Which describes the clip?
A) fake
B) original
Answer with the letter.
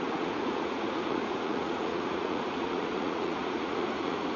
A